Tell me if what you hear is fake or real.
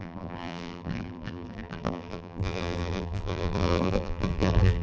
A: fake